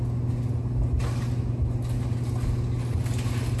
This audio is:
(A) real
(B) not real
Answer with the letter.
A